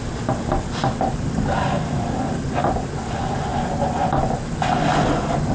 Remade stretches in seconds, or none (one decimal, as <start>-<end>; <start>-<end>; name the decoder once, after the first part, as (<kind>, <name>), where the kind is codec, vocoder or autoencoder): none